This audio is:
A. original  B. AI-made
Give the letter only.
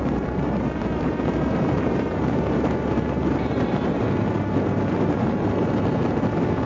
B